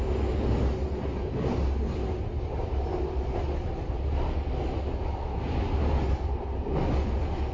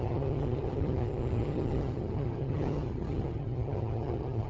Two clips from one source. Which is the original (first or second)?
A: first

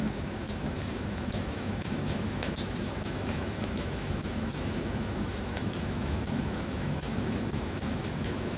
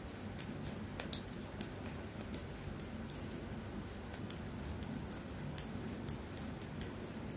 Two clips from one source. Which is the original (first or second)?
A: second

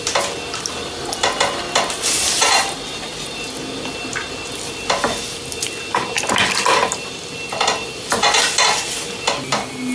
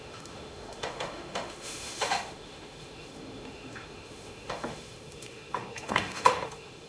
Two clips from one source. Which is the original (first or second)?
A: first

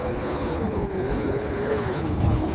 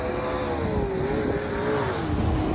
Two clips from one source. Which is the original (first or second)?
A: second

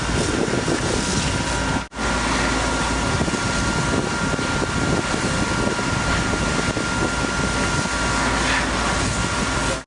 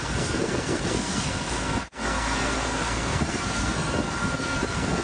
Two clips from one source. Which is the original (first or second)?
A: first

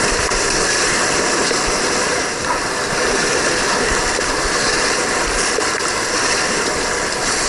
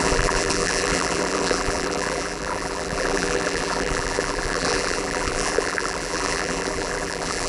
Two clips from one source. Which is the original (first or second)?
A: first